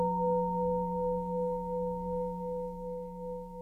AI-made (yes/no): yes